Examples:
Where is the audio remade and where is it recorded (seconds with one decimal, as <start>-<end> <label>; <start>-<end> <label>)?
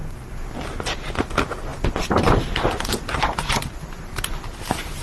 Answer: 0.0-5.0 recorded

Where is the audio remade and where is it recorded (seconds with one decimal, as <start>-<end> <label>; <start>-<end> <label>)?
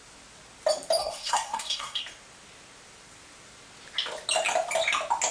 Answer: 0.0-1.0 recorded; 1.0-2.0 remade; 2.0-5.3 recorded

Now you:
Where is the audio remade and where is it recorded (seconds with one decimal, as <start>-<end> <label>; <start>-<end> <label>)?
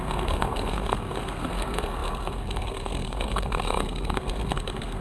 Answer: 0.0-5.0 remade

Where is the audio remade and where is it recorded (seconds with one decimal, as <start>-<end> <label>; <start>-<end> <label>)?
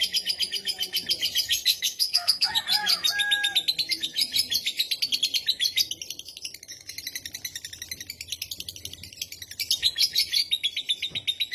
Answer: 0.0-1.7 recorded; 1.7-2.5 remade; 2.5-11.5 recorded